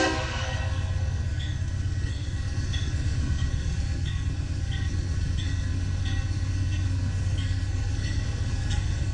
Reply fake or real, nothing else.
fake